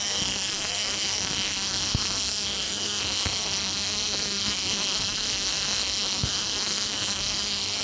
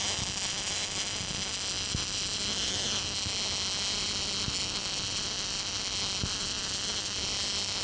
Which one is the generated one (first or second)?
first